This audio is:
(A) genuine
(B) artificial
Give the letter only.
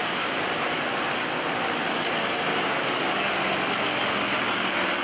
A